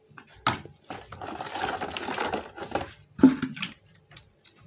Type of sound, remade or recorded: recorded